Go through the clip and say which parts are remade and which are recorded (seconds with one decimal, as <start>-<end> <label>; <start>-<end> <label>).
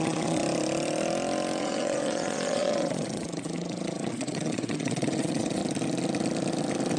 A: 0.0-0.4 remade; 0.4-1.6 recorded; 1.6-5.6 remade; 5.6-7.0 recorded